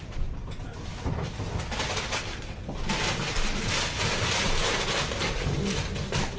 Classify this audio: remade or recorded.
recorded